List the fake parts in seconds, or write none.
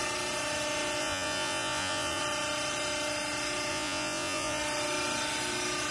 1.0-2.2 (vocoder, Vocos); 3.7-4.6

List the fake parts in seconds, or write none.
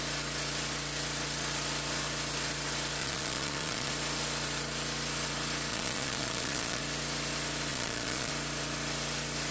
3.0-3.9 (vocoder, Vocos); 5.7-6.8; 7.7-8.3